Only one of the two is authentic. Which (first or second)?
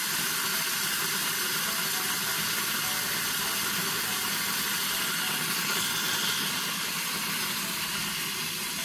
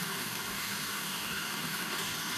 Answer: first